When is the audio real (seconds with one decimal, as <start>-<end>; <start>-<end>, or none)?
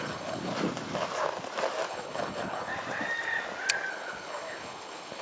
0.5-1.9; 2.7-3.9